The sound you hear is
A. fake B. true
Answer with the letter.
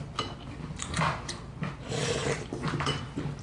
B